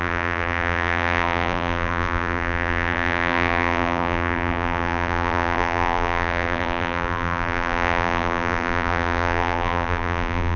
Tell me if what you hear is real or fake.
fake